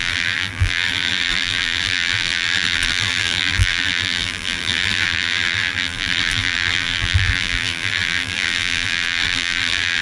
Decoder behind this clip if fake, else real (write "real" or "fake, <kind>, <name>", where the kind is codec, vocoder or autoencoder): fake, vocoder, BigVGAN v2